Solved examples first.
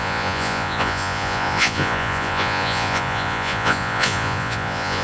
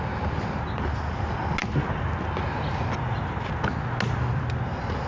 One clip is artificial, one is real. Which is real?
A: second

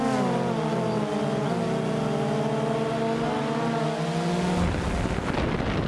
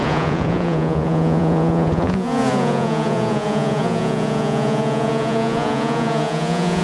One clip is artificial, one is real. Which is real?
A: first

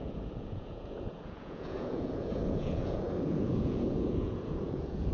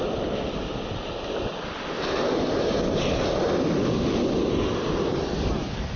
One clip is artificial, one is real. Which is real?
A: second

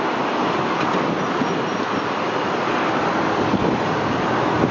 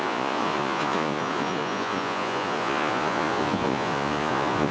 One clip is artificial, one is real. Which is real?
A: first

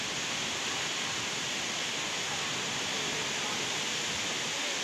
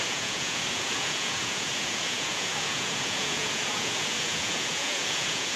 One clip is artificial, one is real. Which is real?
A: first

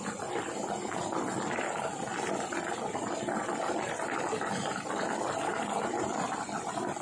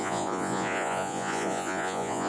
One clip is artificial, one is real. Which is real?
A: first